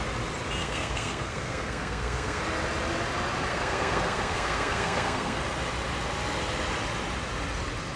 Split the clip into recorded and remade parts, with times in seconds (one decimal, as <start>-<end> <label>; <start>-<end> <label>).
0.0-0.6 recorded; 0.6-2.4 remade; 2.4-3.5 recorded; 3.5-5.4 remade; 5.4-8.0 recorded